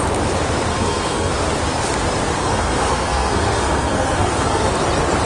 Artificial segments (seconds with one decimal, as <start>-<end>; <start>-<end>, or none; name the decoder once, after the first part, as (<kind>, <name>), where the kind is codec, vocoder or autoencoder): 0.7-1.3 (codec, SNAC); 2.4-4.7